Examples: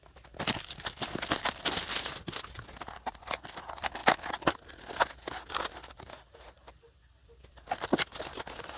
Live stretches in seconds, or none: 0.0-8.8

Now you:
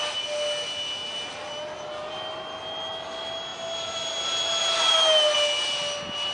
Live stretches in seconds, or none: 0.0-6.3